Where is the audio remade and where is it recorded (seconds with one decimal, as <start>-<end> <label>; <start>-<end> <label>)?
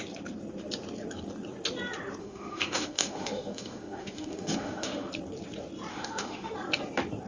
0.0-2.2 recorded; 2.2-5.1 remade; 5.1-5.9 recorded; 5.9-6.5 remade; 6.5-7.3 recorded